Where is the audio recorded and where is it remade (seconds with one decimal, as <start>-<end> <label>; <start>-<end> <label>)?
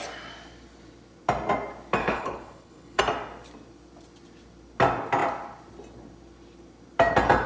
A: 0.0-2.0 recorded; 2.0-3.0 remade; 3.0-7.5 recorded